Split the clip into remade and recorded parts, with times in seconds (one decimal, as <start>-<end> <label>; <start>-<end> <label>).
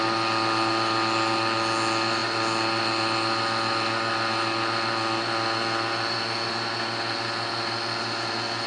0.0-8.7 recorded